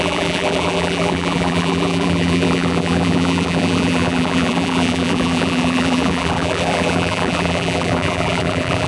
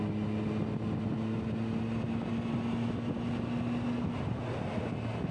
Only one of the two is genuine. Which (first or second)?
second